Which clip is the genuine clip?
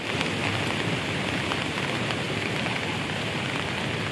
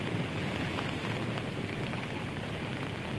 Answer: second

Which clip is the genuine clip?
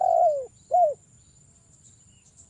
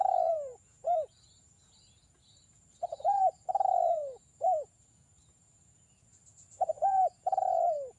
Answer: first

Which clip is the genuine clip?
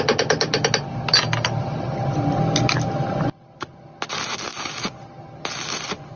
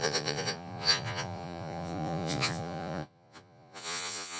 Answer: first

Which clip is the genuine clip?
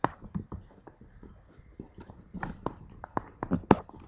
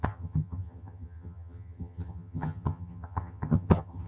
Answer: first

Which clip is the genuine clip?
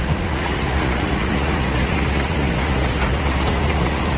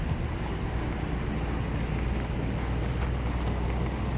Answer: second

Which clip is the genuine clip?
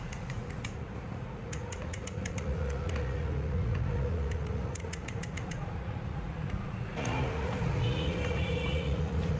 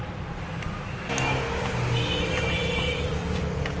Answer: second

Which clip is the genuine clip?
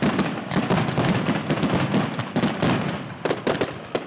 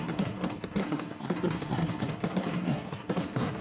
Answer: first